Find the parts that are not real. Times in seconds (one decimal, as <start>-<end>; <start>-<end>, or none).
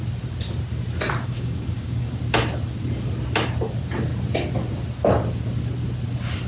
1.2-2.2